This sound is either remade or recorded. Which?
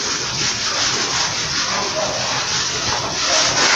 recorded